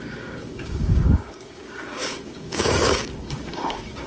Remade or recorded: remade